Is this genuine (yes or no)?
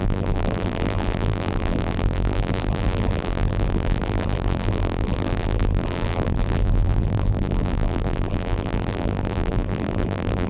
no